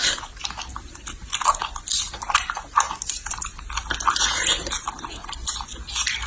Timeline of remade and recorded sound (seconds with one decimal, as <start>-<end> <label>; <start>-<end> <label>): 0.0-0.7 remade; 0.7-1.9 recorded; 1.9-3.6 remade; 3.6-6.3 recorded